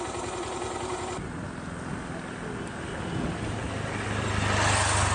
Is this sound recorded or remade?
recorded